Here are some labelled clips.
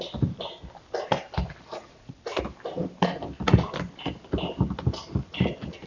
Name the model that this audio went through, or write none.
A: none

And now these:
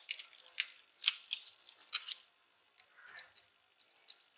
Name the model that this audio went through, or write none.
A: none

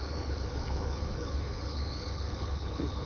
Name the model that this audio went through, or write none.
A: codec, HILCodec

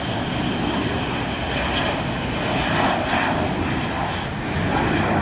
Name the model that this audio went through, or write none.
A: none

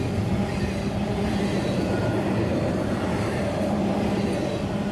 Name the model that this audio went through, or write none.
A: none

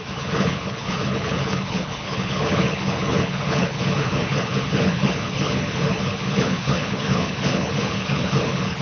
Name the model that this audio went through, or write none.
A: codec, HILCodec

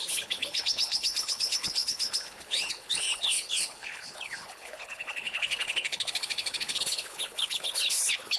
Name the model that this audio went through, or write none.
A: codec, HILCodec